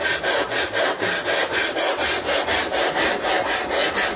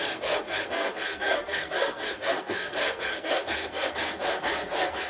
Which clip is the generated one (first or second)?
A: second